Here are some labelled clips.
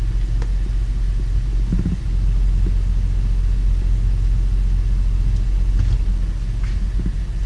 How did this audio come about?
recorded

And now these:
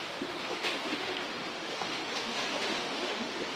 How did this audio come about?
remade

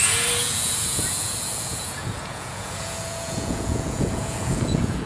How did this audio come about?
remade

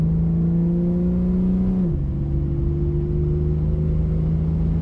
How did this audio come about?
recorded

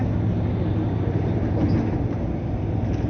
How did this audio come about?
recorded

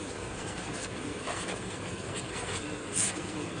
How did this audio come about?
remade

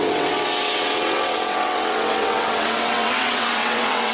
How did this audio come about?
remade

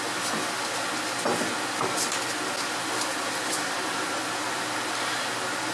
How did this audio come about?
recorded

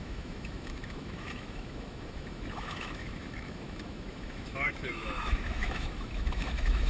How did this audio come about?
remade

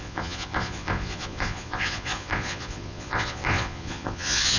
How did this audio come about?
remade